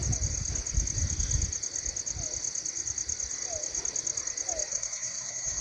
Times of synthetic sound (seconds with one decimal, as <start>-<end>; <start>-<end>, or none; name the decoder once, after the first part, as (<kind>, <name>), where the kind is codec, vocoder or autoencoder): 4.7-5.6 (codec, SNAC)